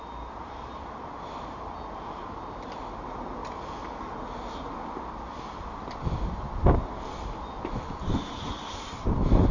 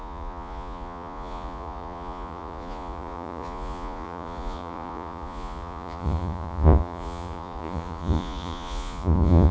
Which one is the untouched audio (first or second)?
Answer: first